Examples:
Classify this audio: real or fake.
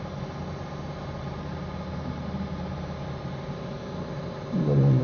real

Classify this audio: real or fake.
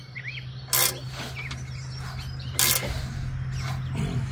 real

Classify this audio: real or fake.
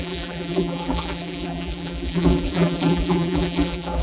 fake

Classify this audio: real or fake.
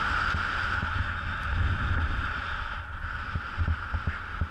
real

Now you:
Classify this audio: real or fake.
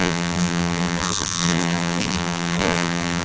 fake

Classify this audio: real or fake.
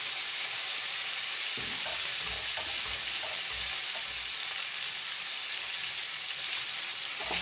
real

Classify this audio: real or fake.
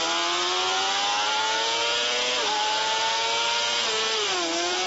real